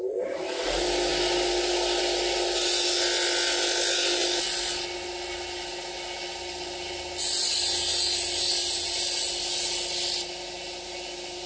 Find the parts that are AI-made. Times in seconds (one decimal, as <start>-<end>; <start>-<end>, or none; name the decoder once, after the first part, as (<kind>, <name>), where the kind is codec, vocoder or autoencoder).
none